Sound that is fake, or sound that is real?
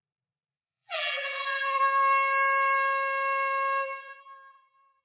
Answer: fake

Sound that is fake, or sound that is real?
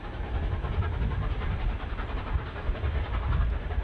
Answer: real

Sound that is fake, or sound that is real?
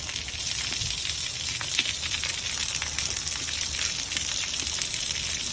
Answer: real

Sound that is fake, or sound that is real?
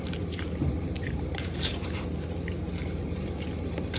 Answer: fake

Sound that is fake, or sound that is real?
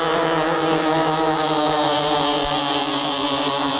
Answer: fake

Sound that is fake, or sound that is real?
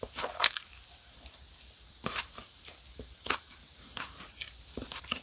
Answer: fake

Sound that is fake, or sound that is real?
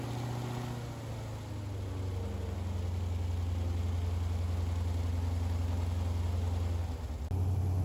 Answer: real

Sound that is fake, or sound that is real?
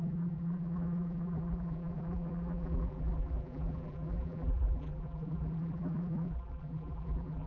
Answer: fake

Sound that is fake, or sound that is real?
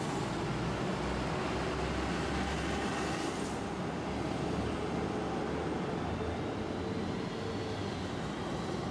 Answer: real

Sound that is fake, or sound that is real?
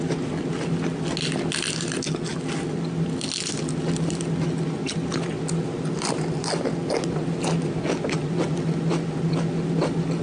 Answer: real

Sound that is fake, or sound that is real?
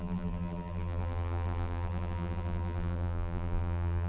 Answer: fake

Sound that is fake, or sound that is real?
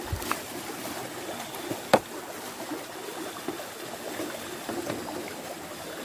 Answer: real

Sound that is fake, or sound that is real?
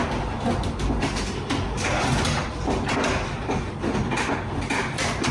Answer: real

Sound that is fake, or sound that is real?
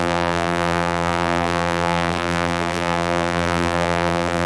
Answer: fake